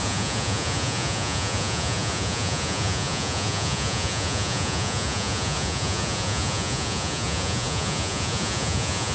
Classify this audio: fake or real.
fake